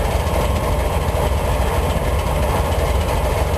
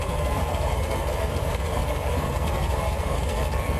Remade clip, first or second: second